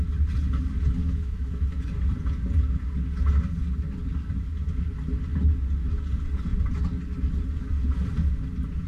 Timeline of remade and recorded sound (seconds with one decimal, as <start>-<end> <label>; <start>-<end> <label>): 0.0-1.0 recorded; 1.0-1.8 remade; 1.8-8.9 recorded

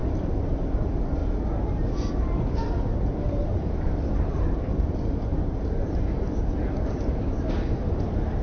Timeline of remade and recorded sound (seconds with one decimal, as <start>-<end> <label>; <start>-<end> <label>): 0.0-5.3 recorded; 5.3-6.7 remade; 6.7-8.4 recorded

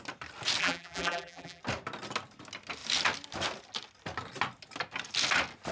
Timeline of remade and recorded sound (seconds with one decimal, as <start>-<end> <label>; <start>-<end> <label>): 0.0-0.6 recorded; 0.6-1.6 remade; 1.6-5.7 recorded